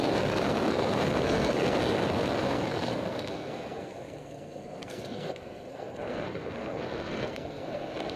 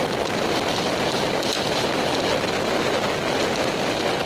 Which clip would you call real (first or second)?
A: second